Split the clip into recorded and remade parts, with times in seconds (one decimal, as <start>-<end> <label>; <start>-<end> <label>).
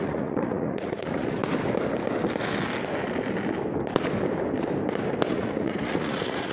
0.0-1.4 remade; 1.4-5.3 recorded; 5.3-6.5 remade